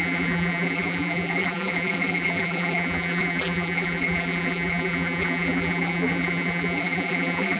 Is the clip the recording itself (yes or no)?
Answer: no